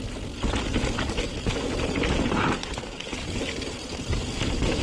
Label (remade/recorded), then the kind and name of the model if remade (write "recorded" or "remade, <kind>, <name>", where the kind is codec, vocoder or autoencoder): recorded